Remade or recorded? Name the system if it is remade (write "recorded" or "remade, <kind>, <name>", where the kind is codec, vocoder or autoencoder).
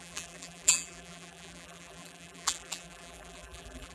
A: remade, vocoder, BigVGAN v2